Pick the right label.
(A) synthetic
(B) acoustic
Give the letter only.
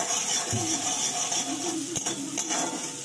B